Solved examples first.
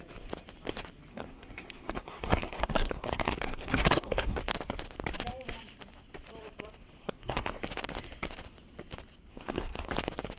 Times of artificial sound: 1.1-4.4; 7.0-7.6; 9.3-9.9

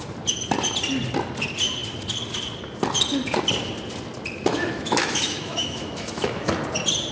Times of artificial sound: 4.5-6.5